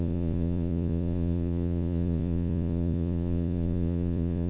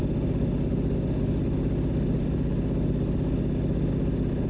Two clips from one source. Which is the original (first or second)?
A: second